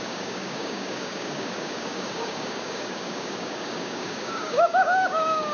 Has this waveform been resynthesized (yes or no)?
yes